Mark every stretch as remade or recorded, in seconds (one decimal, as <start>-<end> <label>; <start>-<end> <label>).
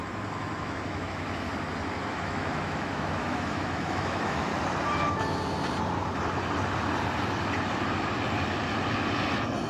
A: 0.0-0.6 recorded; 0.6-1.5 remade; 1.5-2.0 recorded; 2.0-4.5 remade; 4.5-9.7 recorded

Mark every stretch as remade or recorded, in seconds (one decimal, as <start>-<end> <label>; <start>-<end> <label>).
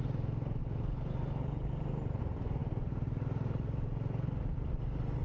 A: 0.0-0.6 recorded; 0.6-2.2 remade; 2.2-5.2 recorded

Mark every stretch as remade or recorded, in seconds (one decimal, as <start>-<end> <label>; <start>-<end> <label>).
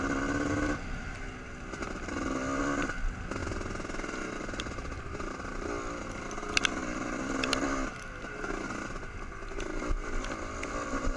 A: 0.0-11.2 recorded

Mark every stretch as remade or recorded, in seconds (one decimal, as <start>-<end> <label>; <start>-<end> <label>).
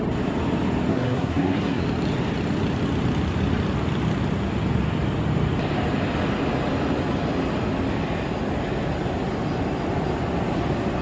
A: 0.0-0.9 recorded; 0.9-1.8 remade; 1.8-11.0 recorded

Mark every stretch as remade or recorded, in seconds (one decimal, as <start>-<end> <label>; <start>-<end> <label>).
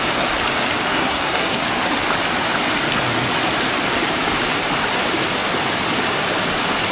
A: 0.0-0.9 recorded; 0.9-1.6 remade; 1.6-6.9 recorded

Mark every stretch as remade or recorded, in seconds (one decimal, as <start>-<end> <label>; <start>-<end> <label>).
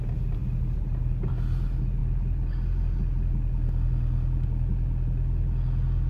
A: 0.0-6.1 recorded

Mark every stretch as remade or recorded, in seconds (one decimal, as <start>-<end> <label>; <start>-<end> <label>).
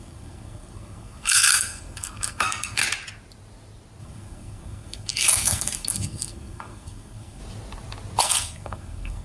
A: 0.0-2.8 remade; 2.8-4.0 recorded; 4.0-7.4 remade; 7.4-8.2 recorded; 8.2-9.2 remade